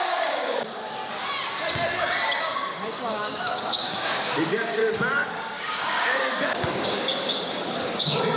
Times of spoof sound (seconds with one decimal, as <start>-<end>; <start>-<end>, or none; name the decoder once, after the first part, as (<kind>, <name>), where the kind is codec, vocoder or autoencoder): 0.0-1.0 (codec, DAC); 2.4-4.8; 5.3-8.4